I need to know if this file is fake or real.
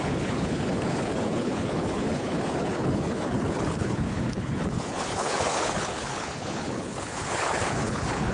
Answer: fake